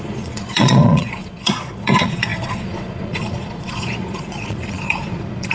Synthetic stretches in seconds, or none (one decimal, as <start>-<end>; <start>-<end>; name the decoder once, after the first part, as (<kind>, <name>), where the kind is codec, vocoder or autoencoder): 0.0-5.5 (vocoder, Vocos)